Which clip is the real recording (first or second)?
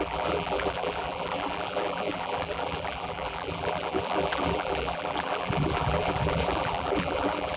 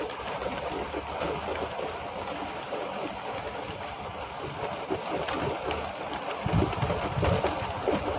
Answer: second